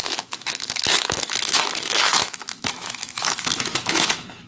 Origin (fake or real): fake